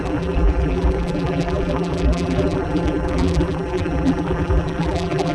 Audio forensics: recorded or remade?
remade